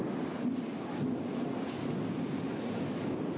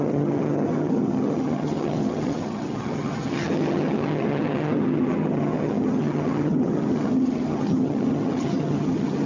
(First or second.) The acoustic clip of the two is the first